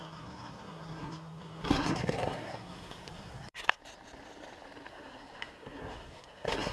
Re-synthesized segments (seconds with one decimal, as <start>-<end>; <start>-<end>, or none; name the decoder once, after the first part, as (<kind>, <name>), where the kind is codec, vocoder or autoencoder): 0.0-3.8 (codec, SNAC); 4.9-6.7